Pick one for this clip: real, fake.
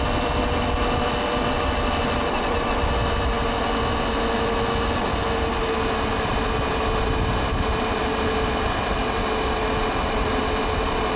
real